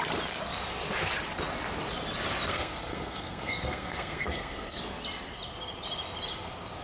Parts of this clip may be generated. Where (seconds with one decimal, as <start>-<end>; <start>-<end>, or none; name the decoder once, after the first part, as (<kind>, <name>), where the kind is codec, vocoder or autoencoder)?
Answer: 2.5-4.8 (codec, SNAC)